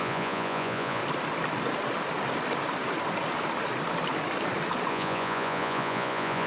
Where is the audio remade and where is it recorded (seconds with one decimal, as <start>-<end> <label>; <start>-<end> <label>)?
0.0-1.0 remade; 1.0-4.9 recorded; 4.9-6.5 remade